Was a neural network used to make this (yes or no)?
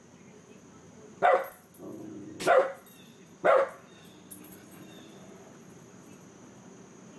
no